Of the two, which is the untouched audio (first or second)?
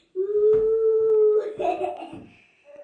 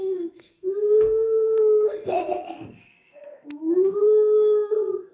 first